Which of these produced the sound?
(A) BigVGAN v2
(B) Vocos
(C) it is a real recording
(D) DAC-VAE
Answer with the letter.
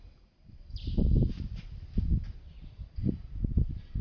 C